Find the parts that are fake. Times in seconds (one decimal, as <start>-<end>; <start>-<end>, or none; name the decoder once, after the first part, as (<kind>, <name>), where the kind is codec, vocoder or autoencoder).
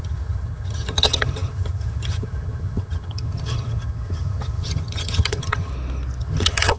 0.0-5.7 (vocoder, HiFi-GAN); 6.2-6.8